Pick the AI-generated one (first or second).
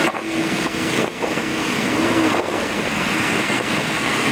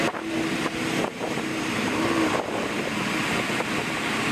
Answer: first